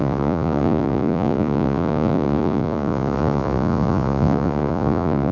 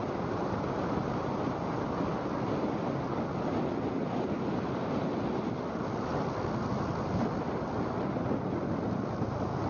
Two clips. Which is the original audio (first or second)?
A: second